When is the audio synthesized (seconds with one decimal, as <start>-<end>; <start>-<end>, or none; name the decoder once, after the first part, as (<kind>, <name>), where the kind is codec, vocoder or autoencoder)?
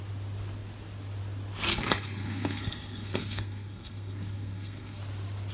1.7-5.0 (codec, SNAC)